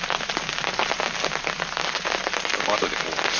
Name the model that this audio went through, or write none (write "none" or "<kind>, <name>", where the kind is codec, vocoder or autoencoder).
none